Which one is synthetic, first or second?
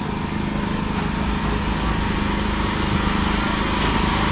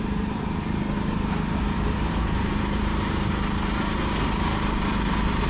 second